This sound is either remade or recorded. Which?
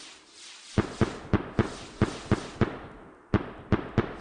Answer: recorded